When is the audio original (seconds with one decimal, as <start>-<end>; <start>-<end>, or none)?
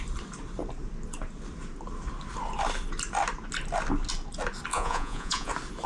0.0-4.7; 5.5-5.9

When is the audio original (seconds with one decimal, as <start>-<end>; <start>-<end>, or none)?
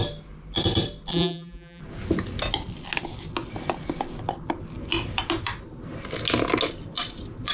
0.0-1.1; 1.8-7.5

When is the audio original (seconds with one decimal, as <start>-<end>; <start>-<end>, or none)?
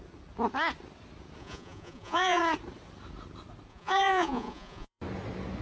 0.0-1.4; 2.4-3.7; 5.0-5.6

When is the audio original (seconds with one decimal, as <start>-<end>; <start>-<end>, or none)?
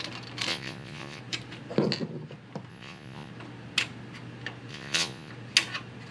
0.0-0.5; 1.2-2.7; 3.3-4.7; 5.3-6.1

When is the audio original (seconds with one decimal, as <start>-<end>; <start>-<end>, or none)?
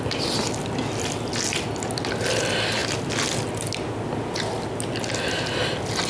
0.0-6.1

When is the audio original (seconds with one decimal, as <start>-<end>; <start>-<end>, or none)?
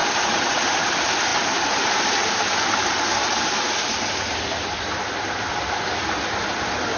0.6-7.0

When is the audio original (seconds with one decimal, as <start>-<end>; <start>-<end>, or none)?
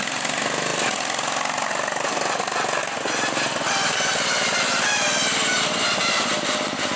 0.7-1.7; 2.8-5.6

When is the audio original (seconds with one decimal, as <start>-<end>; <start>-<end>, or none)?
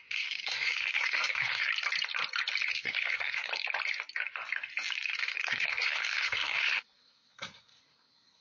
1.7-2.7; 3.5-5.1